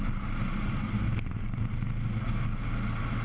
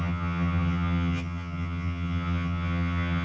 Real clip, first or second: first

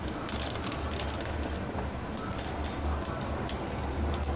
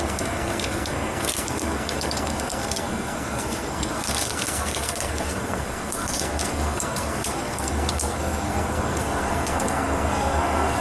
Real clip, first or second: first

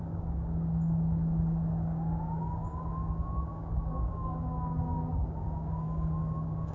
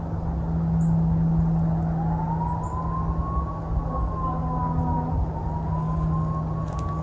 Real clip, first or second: second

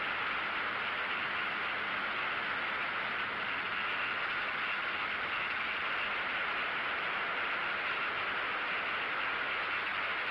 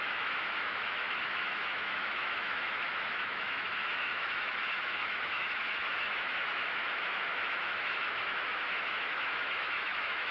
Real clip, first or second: first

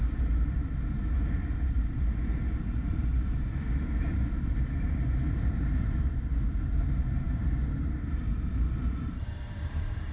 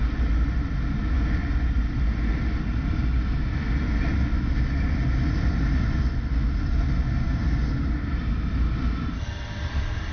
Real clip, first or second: second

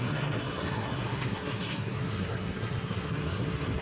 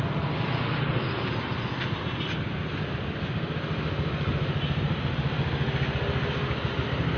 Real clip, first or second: second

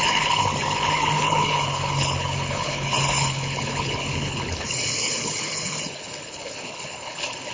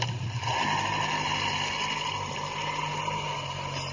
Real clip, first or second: second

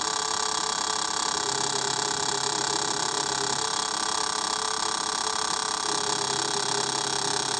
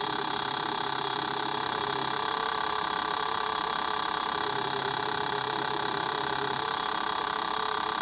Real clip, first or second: first